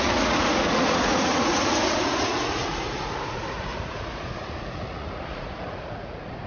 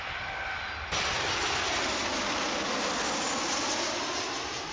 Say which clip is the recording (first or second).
second